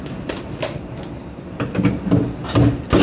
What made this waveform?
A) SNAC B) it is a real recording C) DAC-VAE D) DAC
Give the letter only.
B